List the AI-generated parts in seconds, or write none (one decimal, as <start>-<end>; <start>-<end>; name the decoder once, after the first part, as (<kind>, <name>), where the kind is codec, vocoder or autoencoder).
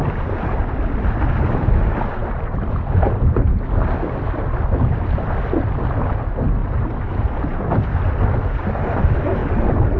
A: 6.6-7.6 (vocoder, BigVGAN v2); 9.4-10.0